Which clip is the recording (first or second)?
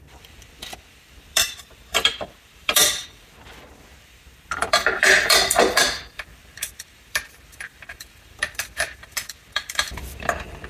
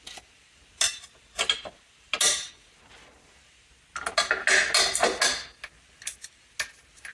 second